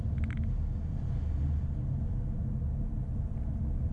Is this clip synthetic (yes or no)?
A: no